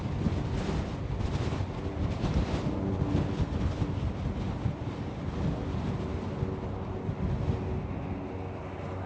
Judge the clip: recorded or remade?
recorded